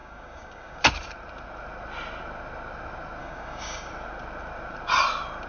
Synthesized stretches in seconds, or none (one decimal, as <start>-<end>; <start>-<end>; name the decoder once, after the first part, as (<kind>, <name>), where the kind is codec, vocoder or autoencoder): 0.0-0.8 (codec, DAC); 3.2-3.9

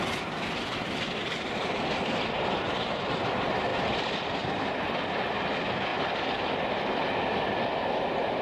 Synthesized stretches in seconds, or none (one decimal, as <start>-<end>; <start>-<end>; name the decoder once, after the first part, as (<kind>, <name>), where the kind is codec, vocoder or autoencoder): 3.7-5.2 (vocoder, BigVGAN v2); 5.9-6.7

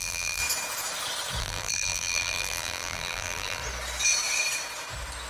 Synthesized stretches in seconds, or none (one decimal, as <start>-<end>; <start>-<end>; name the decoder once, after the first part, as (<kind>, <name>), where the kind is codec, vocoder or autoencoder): 0.0-0.4 (vocoder, BigVGAN v2); 1.4-3.6